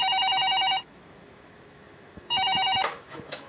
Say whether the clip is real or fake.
fake